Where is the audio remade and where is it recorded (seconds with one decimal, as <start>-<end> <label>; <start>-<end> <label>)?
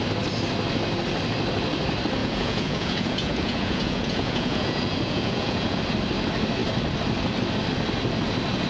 0.0-2.2 recorded; 2.2-5.8 remade; 5.8-8.7 recorded